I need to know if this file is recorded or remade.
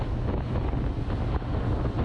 recorded